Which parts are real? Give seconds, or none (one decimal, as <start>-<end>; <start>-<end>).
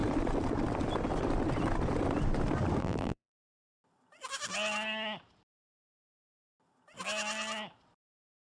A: 0.0-2.8; 3.7-8.5